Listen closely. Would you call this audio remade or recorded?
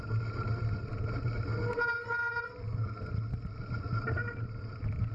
recorded